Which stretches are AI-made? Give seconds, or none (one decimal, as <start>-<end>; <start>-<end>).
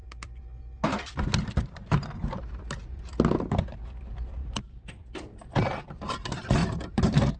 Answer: 6.6-7.4